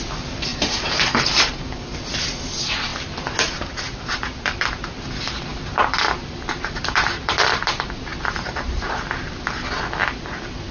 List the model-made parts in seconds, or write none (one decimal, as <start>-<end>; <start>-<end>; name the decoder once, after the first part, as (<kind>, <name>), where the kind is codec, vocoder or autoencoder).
5.5-7.7 (vocoder, BigVGAN v2); 8.1-9.4